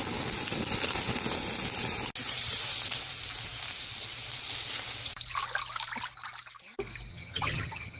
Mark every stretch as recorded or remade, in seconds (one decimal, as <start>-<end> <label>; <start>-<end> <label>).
0.0-7.1 recorded; 7.1-8.0 remade